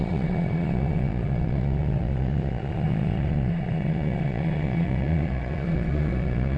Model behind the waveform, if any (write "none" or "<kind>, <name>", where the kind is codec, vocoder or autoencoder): vocoder, Vocos